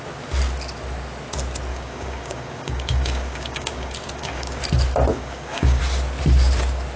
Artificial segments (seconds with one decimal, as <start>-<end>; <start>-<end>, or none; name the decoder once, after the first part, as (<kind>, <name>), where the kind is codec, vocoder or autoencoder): 1.7-4.6 (codec, DAC); 5.1-5.8